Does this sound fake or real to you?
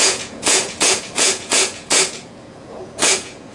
fake